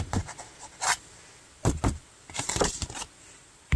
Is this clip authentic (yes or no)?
yes